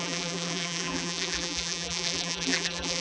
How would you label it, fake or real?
fake